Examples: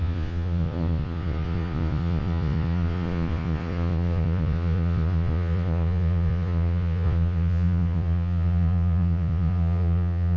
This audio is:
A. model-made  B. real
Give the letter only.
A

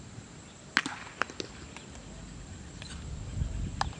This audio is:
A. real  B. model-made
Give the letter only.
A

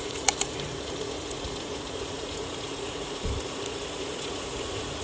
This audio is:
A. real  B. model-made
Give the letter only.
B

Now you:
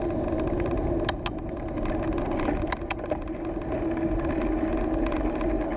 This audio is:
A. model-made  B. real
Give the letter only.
B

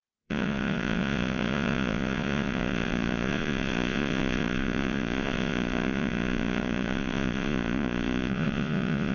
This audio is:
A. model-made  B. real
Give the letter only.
A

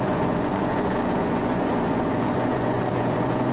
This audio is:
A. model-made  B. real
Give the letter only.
A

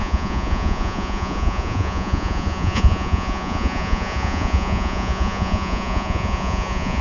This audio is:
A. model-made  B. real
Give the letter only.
A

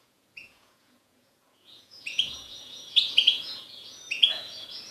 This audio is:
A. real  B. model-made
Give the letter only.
B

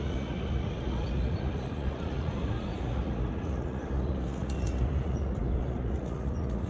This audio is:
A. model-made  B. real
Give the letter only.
A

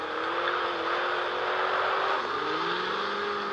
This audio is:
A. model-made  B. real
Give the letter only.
B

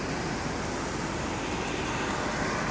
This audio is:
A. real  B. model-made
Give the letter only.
A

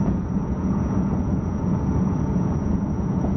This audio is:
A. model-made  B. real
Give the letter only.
A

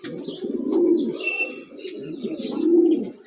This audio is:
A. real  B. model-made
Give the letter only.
B